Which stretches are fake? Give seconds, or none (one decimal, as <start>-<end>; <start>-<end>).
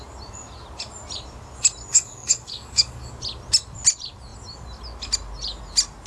1.9-3.1